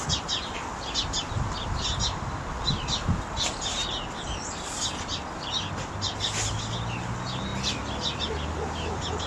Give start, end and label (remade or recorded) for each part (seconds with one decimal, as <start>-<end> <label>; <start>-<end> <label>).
0.0-9.3 recorded